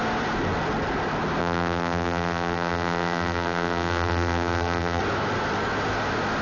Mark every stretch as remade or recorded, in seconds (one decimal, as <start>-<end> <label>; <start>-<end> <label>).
0.0-1.4 recorded; 1.4-5.0 remade; 5.0-6.4 recorded